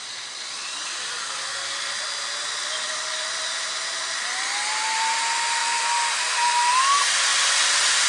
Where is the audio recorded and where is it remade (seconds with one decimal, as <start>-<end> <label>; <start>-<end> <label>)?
0.0-8.1 recorded